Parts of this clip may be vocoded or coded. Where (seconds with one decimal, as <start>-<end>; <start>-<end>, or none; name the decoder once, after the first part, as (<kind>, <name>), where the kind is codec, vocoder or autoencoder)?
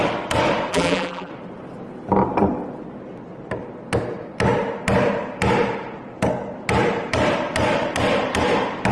0.7-1.3 (vocoder, BigVGAN v2)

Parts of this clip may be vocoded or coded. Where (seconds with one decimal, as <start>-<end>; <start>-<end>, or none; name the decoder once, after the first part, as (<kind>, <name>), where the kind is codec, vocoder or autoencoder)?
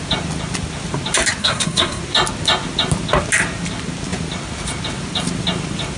1.4-2.0 (codec, SNAC)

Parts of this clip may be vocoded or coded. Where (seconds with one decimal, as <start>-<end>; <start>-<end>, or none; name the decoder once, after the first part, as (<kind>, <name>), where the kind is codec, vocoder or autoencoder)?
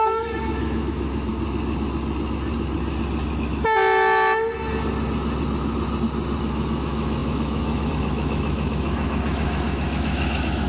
0.0-1.3 (autoencoder, DAC-VAE); 6.4-10.7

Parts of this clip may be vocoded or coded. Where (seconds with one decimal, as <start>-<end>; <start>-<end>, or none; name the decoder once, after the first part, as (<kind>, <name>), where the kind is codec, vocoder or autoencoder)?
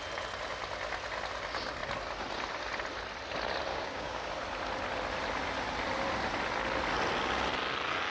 3.7-4.3 (codec, DAC)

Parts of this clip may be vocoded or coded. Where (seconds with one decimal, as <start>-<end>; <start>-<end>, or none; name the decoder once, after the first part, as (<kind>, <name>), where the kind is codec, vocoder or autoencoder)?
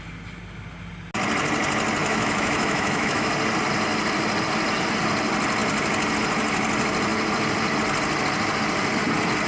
2.0-3.3 (autoencoder, DAC-VAE)